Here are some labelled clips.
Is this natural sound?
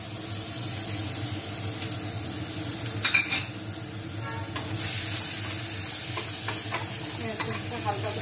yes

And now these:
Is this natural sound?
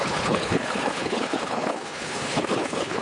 no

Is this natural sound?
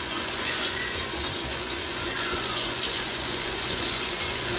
no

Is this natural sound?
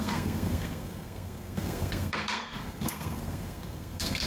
no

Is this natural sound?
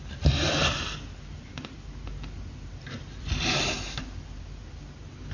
yes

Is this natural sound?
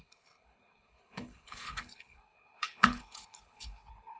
no